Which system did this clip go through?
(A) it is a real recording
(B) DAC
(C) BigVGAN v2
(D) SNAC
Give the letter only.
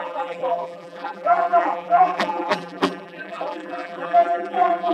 C